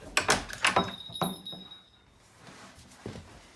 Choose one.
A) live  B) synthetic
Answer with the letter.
A